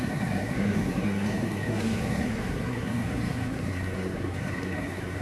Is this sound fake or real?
fake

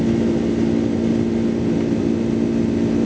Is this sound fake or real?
real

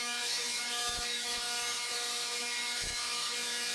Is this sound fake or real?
fake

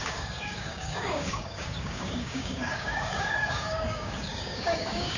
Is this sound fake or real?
fake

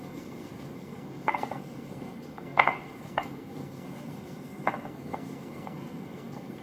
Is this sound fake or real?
fake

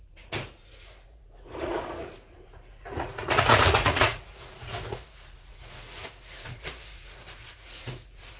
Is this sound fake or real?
fake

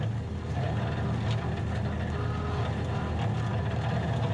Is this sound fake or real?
real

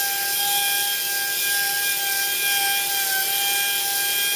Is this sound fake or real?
real